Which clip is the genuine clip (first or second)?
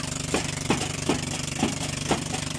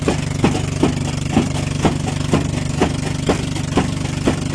second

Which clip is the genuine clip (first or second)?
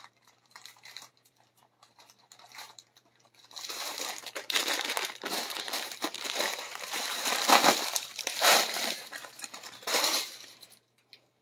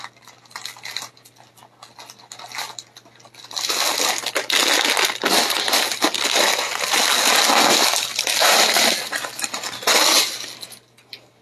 second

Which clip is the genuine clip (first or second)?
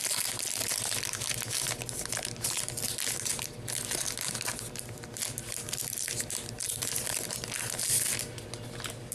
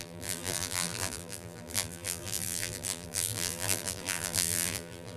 first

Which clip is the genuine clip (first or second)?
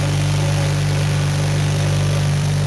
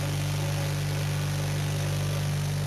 second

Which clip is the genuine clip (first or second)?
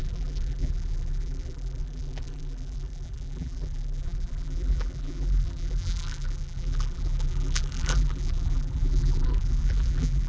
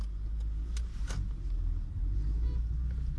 second